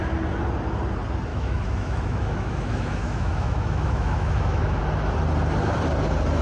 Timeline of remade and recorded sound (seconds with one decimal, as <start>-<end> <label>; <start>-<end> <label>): 0.0-1.3 recorded; 1.3-4.8 remade; 4.8-6.4 recorded